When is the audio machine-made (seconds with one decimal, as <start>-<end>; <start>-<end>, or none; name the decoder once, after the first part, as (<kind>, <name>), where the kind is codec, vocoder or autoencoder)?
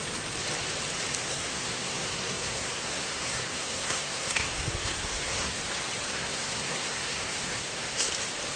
1.2-5.6 (codec, SNAC); 6.1-8.1